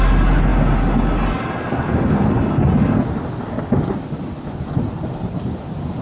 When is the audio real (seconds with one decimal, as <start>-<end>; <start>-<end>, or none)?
0.0-6.0